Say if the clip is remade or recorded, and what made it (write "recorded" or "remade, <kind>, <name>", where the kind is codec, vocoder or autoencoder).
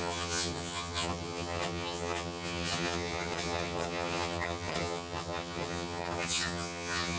remade, vocoder, HiFi-GAN